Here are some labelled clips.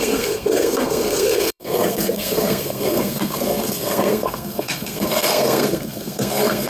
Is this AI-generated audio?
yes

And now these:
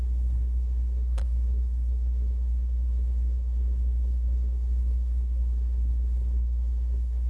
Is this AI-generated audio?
yes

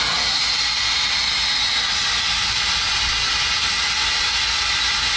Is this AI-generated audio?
no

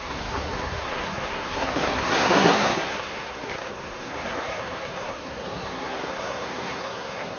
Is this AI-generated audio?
yes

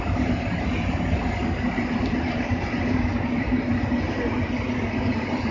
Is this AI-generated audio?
no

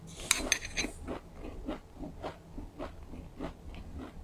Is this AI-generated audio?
no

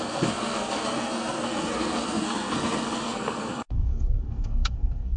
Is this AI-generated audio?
yes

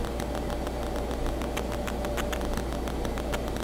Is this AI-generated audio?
no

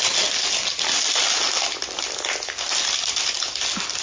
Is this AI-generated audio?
no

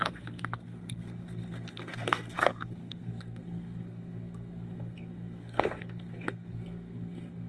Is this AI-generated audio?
yes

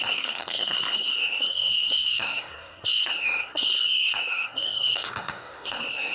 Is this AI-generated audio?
yes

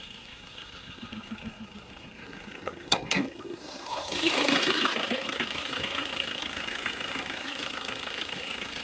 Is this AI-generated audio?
yes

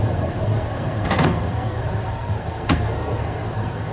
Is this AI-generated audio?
yes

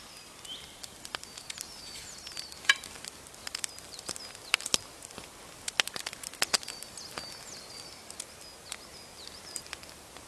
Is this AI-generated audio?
no